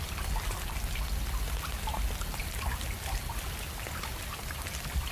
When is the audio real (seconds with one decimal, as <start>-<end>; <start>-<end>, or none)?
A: 0.0-5.1